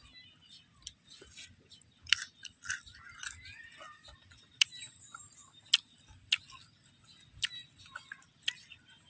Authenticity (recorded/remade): recorded